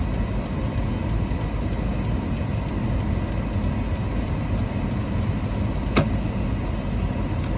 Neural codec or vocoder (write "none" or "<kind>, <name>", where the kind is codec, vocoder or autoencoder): none